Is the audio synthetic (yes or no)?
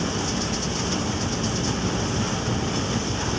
no